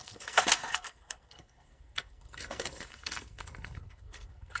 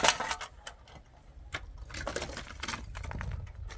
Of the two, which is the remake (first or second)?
first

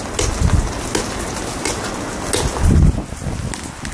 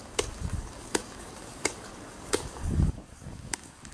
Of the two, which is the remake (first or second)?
second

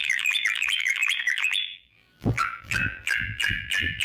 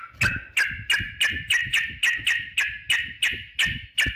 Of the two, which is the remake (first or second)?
first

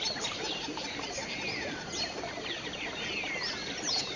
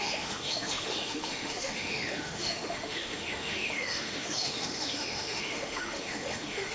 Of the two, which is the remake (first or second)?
second